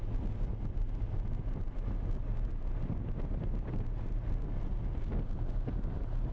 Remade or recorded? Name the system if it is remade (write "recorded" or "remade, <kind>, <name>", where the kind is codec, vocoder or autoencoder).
recorded